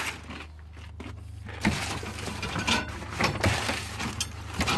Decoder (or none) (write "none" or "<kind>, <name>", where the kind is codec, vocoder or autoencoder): none